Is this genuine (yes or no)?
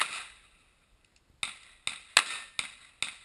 yes